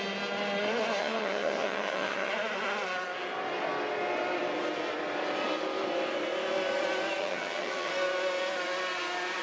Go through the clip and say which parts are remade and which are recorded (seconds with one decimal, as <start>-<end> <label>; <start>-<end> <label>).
0.0-1.0 recorded; 1.0-2.3 remade; 2.3-7.2 recorded; 7.2-7.9 remade; 7.9-9.4 recorded